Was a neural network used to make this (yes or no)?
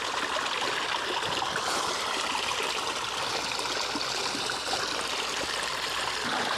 no